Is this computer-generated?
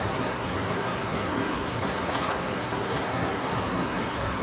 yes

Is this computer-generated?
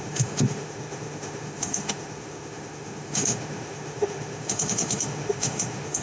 yes